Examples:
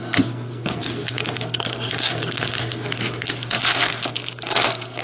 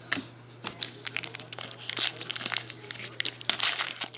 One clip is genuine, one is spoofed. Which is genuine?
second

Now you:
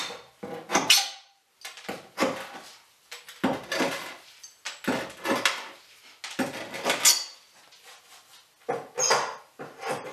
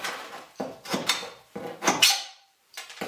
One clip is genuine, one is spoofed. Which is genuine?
first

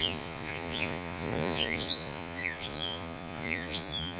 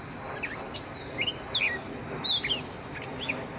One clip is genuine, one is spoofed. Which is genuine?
second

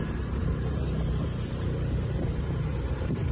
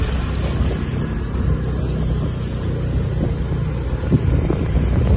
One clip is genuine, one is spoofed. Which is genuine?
second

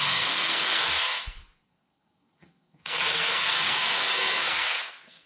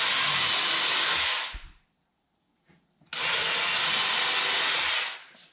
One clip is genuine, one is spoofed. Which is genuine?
second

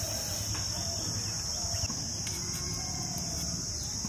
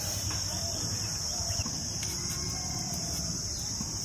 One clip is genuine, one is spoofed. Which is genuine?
first